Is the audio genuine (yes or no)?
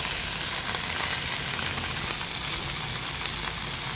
yes